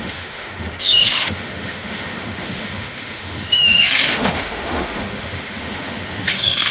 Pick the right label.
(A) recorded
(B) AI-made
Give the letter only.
B